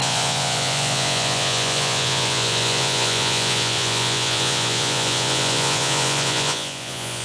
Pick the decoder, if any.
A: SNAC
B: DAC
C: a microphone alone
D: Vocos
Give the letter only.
D